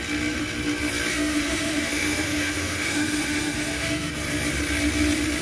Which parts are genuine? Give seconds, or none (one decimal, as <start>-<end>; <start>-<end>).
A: 0.0-1.1; 4.1-5.4